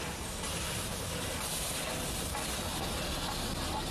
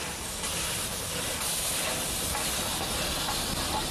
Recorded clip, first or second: first